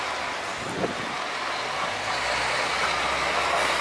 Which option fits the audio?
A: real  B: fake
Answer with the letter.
A